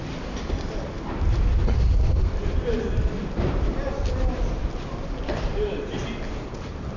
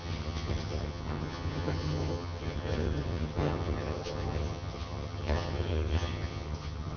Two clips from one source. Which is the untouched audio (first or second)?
first